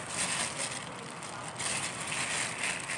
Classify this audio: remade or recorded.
recorded